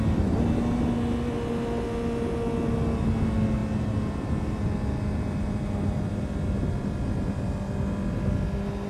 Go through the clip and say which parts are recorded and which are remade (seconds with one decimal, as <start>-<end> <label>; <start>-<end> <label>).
0.0-8.9 recorded